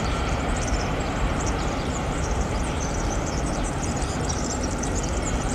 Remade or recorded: remade